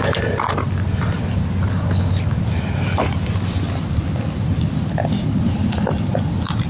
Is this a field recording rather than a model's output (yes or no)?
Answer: yes